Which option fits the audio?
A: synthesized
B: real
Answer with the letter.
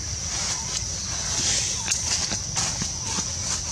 B